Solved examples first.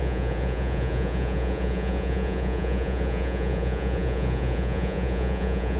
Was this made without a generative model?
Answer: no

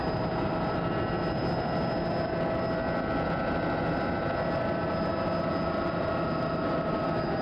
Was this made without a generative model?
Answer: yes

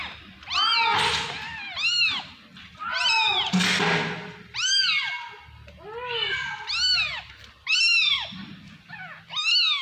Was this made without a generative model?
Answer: yes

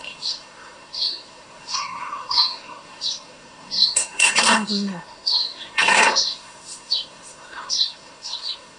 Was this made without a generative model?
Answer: no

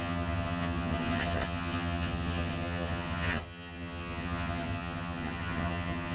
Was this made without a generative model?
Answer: no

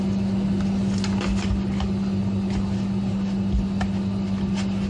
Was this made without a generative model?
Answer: yes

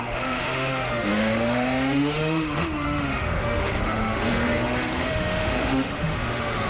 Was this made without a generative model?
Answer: no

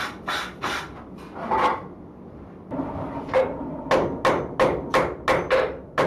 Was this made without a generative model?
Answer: yes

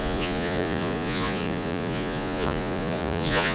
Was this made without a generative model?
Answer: no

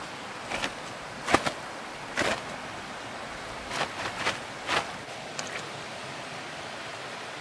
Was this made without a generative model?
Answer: yes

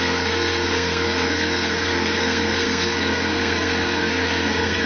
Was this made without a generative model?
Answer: no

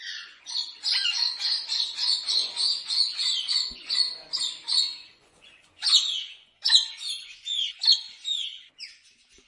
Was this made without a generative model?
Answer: no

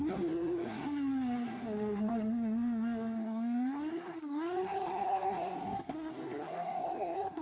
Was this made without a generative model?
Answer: no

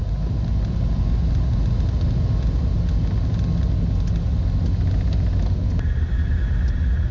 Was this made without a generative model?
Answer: yes